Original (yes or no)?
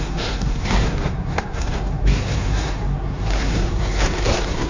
no